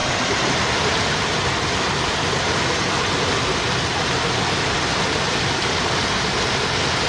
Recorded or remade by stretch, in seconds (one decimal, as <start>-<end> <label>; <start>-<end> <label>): 0.0-7.1 recorded